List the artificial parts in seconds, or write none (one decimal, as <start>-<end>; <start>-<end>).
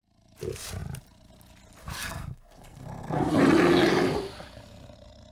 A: 1.8-3.3